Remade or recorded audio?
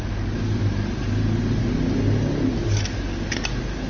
recorded